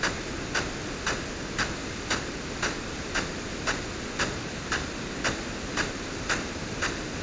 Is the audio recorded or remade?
recorded